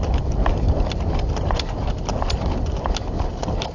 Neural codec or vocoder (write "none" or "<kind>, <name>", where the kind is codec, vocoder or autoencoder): none